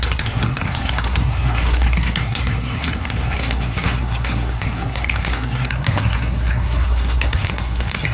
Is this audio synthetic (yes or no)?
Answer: yes